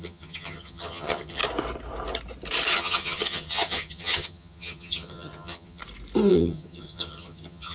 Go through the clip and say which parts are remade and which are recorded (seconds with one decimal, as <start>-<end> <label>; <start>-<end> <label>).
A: 0.0-1.4 remade; 1.4-2.7 recorded; 2.7-5.8 remade; 5.8-6.3 recorded; 6.3-7.7 remade